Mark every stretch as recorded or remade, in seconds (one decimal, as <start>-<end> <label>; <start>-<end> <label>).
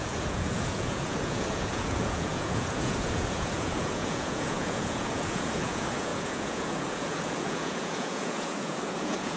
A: 0.0-9.4 remade